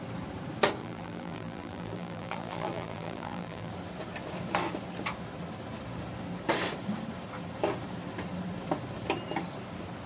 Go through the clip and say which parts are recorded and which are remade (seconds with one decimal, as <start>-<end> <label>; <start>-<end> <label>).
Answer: 0.0-0.8 recorded; 0.8-3.7 remade; 3.7-10.1 recorded